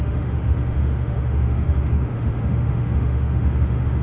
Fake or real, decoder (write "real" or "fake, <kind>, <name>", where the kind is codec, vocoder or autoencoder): fake, autoencoder, DAC-VAE